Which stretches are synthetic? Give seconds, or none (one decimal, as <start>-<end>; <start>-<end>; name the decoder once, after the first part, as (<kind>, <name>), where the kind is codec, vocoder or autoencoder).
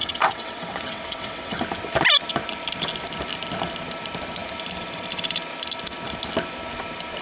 0.0-1.6 (vocoder, WaveNeXt)